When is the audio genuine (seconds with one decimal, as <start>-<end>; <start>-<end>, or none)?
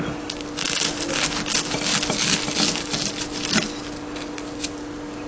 0.0-5.3